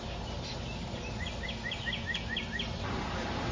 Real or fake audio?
real